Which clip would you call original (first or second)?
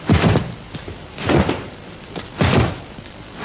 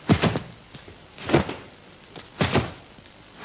second